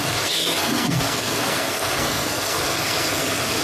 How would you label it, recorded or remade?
remade